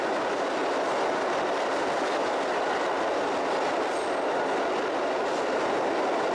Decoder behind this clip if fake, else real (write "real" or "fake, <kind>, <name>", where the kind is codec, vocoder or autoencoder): real